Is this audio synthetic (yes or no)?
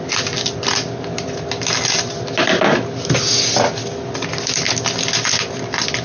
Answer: no